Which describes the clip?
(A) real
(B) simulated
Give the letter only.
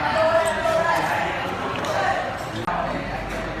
A